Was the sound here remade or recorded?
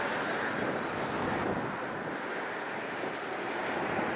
recorded